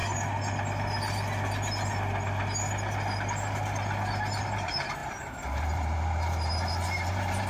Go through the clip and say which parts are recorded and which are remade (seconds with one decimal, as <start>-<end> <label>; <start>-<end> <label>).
0.0-4.4 recorded; 4.4-7.5 remade